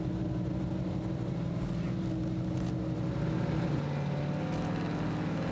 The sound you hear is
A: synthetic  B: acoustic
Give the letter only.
B